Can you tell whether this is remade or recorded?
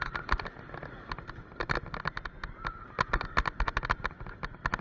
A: recorded